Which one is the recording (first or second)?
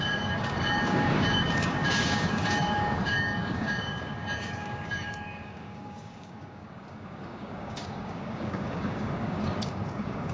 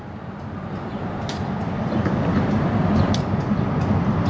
second